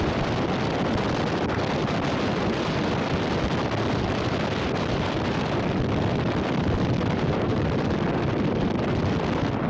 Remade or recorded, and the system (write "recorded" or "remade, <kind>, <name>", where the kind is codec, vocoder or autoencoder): remade, vocoder, BigVGAN v2